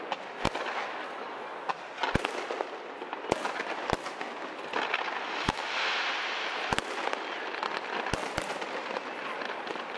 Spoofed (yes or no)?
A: no